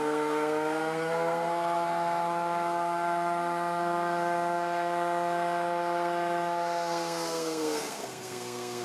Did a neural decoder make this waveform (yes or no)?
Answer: yes